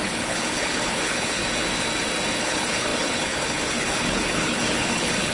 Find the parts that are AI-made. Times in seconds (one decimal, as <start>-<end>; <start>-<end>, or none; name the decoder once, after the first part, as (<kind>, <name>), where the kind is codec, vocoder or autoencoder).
0.0-1.4 (codec, HILCodec); 2.4-5.3